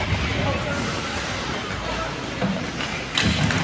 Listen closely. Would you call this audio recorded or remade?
recorded